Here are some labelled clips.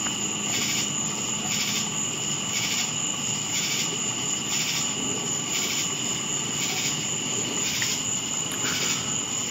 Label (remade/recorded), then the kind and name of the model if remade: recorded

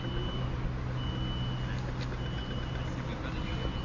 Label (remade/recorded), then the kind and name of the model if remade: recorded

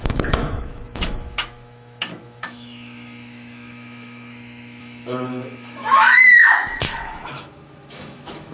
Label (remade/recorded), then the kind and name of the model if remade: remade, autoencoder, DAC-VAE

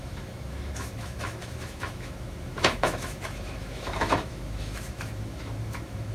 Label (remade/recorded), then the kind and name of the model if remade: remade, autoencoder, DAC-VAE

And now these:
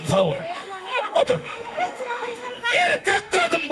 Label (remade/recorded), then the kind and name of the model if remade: remade, autoencoder, DAC-VAE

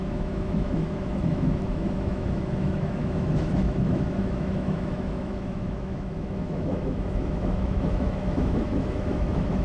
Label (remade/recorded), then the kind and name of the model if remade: remade, autoencoder, DAC-VAE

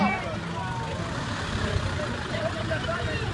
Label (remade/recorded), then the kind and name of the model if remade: recorded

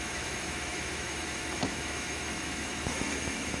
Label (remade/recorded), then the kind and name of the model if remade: remade, autoencoder, DAC-VAE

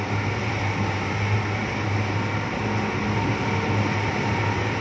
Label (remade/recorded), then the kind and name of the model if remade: recorded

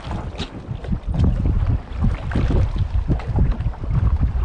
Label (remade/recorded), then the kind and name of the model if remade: recorded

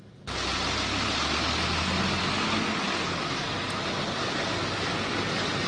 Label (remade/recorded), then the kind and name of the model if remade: recorded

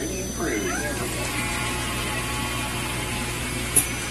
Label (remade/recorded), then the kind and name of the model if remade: recorded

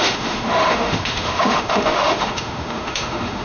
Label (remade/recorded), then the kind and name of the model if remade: remade, autoencoder, DAC-VAE